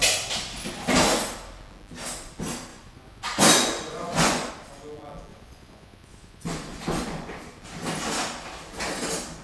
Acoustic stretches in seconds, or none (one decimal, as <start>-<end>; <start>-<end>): 0.0-2.7; 4.5-5.3; 7.6-9.4